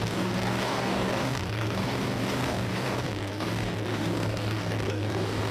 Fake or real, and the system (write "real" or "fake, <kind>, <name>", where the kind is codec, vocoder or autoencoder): fake, codec, DAC